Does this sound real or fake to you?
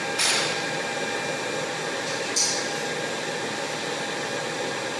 real